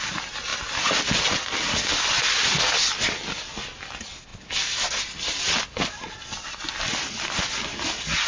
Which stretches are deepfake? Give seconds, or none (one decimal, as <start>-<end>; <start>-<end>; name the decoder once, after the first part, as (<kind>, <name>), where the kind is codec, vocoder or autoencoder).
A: none